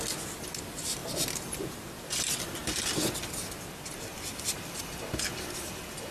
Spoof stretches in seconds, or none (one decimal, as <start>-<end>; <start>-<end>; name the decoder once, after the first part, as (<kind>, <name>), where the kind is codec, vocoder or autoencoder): 1.0-2.1 (vocoder, BigVGAN v2)